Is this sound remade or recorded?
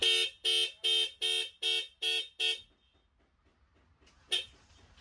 recorded